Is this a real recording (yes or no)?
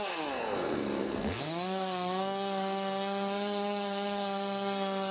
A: no